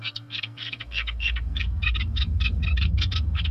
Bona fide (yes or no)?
no